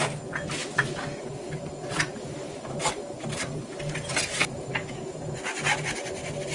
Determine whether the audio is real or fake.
real